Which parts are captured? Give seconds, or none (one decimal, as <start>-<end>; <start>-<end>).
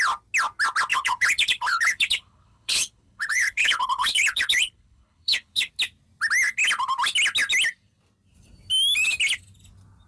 0.0-0.9; 5.7-10.1